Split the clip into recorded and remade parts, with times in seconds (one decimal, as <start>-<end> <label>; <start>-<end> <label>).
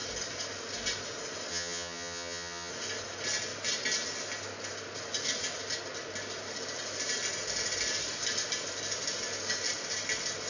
0.0-1.5 recorded; 1.5-2.7 remade; 2.7-10.5 recorded